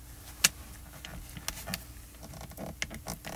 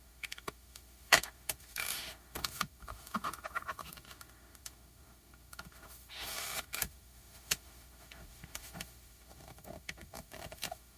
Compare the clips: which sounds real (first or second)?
first